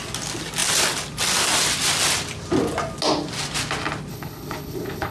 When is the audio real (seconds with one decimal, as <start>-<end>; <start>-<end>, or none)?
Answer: 0.0-4.1

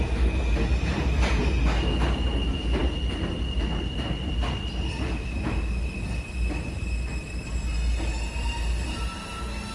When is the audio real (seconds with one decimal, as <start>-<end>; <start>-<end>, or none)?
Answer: 0.0-9.7

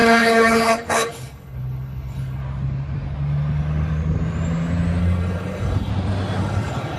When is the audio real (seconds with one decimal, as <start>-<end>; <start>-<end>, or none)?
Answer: 2.4-5.0; 5.9-6.4

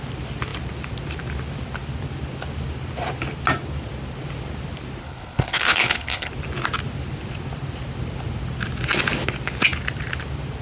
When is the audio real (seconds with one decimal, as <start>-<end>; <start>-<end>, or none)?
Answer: 0.0-5.0; 6.3-10.6

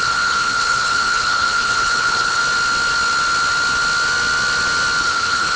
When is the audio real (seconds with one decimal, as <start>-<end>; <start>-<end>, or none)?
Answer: 2.4-5.0

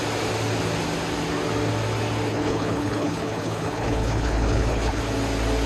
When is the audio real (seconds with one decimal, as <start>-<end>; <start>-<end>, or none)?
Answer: 0.0-2.3; 5.0-5.7

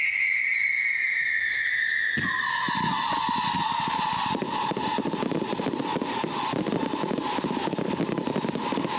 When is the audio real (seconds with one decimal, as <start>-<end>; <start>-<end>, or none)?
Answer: 0.0-9.0

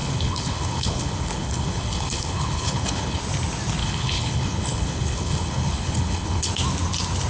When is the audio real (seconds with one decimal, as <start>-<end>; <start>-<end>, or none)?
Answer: 3.2-3.8; 6.5-7.3